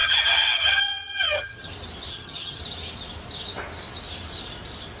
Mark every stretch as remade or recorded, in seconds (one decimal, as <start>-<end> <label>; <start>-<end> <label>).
0.0-1.7 remade; 1.7-2.1 recorded; 2.1-2.6 remade; 2.6-5.0 recorded